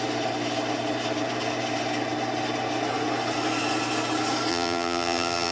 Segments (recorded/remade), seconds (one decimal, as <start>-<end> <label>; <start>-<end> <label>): 0.0-4.5 recorded; 4.5-5.5 remade